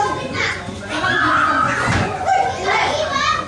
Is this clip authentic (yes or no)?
no